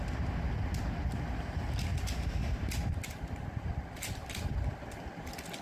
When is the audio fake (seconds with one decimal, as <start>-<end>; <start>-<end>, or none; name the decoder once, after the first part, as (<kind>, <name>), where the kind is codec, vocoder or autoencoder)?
none